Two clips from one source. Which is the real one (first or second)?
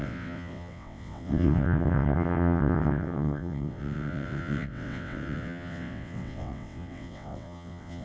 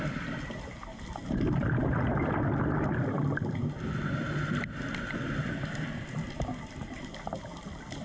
second